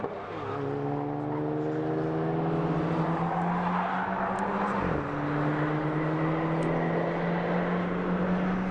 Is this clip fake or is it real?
real